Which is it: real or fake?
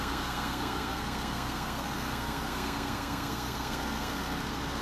fake